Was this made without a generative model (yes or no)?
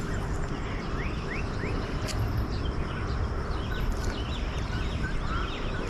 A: no